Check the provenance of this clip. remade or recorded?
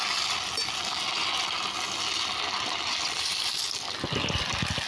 recorded